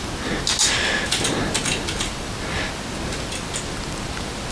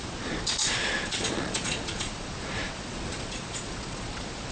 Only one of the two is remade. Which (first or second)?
second